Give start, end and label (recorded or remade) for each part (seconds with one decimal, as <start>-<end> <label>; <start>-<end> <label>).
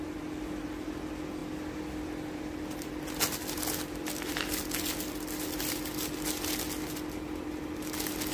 0.0-8.3 recorded